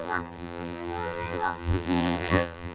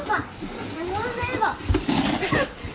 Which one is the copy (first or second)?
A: first